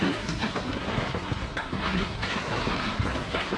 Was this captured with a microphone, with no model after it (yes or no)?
no